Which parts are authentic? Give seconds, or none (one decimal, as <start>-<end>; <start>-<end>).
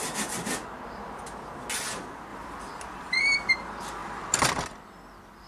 0.8-2.3; 3.5-4.0; 4.8-5.5